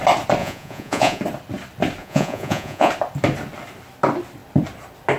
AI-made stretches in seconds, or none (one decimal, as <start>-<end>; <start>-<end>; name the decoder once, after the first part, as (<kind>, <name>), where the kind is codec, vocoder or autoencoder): 0.4-1.2 (vocoder, Vocos); 2.0-2.9

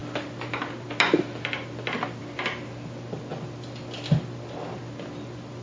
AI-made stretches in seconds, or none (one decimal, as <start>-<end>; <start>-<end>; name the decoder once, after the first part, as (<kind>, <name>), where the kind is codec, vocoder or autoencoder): none

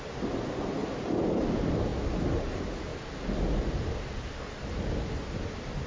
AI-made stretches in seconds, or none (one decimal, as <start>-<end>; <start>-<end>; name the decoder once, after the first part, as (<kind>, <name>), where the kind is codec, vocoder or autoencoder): none

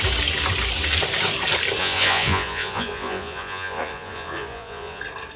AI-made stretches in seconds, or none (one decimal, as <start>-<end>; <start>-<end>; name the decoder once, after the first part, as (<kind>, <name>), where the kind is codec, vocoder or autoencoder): 1.8-5.0 (vocoder, Vocos)

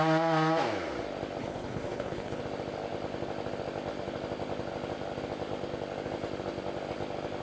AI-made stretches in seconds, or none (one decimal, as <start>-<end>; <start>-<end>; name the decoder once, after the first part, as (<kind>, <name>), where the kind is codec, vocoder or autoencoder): 1.4-2.4 (codec, HILCodec)

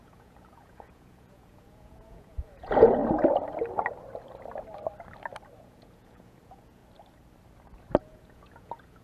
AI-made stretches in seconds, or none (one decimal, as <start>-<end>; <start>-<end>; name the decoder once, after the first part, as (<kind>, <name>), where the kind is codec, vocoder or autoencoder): 0.0-3.0 (vocoder, Vocos); 5.6-6.8; 8.0-9.0

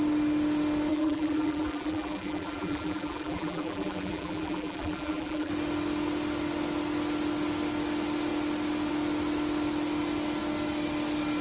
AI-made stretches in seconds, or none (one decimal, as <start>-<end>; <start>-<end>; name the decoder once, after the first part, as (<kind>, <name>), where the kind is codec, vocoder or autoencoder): 0.9-5.5 (vocoder, BigVGAN v2)